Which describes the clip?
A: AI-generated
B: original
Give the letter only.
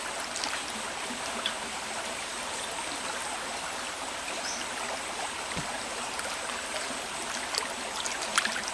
B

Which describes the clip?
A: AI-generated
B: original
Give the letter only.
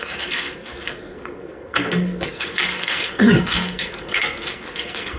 A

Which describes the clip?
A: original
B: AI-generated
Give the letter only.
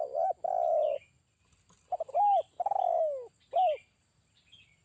A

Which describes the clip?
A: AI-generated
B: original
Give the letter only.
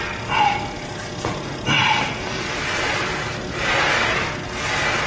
B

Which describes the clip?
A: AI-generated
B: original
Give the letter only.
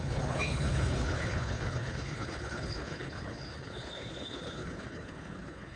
A